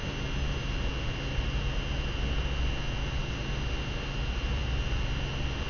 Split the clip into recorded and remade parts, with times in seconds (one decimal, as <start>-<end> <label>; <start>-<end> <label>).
0.0-5.7 recorded